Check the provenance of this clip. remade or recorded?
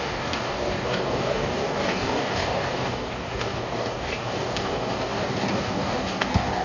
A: remade